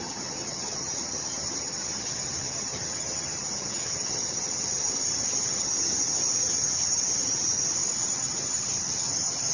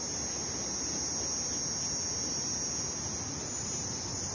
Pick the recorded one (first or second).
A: second